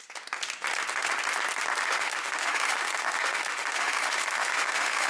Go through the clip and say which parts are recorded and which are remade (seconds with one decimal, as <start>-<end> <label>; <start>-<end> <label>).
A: 0.0-1.8 recorded; 1.8-5.1 remade